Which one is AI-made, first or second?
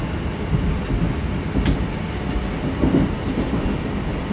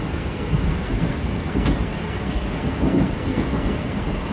second